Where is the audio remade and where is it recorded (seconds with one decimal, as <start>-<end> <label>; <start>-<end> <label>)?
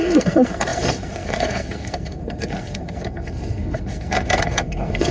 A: 0.0-5.1 remade